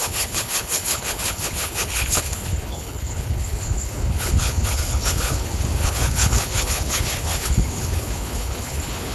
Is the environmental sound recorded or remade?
remade